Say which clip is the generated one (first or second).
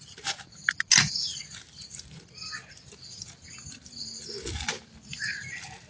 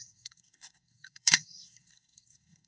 second